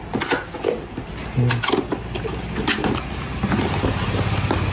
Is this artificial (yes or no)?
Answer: no